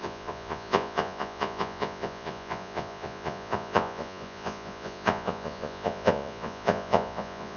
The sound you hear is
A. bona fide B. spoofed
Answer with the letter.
B